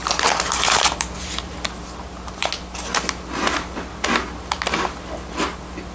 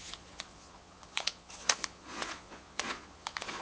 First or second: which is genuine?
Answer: first